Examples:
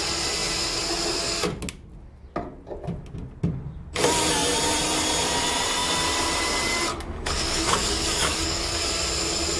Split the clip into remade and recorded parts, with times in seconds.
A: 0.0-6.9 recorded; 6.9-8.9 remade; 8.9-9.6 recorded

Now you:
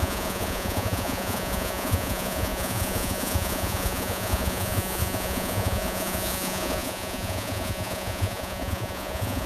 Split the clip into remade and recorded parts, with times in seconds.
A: 0.0-9.5 remade

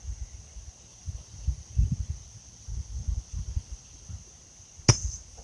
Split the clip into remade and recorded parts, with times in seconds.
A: 0.0-0.9 recorded; 0.9-4.1 remade; 4.1-5.4 recorded

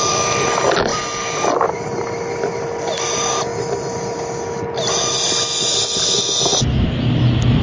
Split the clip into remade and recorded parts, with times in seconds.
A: 0.0-7.6 recorded

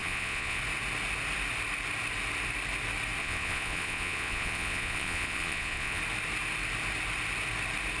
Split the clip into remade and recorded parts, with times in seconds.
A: 0.0-0.6 remade; 0.6-3.2 recorded; 3.2-6.0 remade; 6.0-8.0 recorded

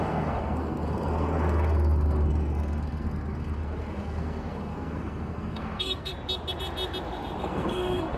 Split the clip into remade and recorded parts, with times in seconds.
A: 0.0-6.1 remade; 6.1-7.4 recorded; 7.4-8.2 remade